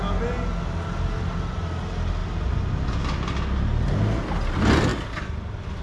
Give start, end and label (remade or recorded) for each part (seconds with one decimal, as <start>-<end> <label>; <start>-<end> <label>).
0.0-2.2 recorded; 2.2-3.4 remade; 3.4-4.9 recorded; 4.9-5.8 remade